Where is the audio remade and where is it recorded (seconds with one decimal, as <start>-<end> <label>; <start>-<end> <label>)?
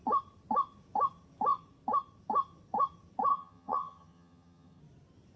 0.0-3.3 recorded; 3.3-4.8 remade; 4.8-5.4 recorded